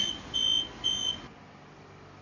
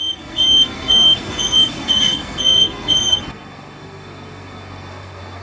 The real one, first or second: first